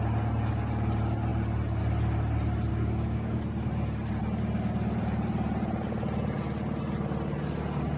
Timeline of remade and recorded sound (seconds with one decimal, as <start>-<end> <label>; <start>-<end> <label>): 0.0-2.7 recorded; 2.7-3.4 remade; 3.4-8.0 recorded